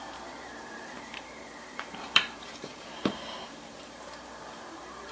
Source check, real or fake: fake